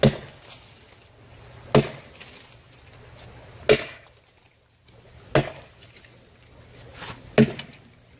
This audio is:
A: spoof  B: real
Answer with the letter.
B